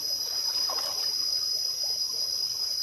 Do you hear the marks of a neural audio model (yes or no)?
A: yes